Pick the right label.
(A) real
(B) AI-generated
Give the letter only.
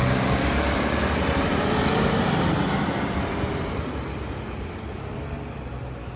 B